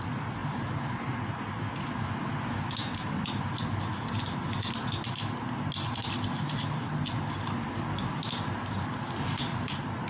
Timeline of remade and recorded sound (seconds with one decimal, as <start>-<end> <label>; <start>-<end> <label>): 0.0-10.1 recorded